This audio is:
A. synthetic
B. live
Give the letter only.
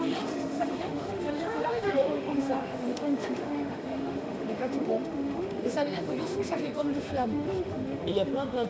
A